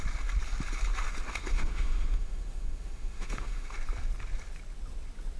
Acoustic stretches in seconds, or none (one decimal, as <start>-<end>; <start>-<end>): 0.0-1.5; 3.7-5.4